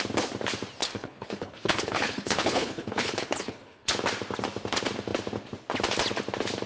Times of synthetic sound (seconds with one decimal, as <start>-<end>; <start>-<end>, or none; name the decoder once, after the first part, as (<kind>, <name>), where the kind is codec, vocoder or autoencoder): 0.8-3.9 (codec, HILCodec)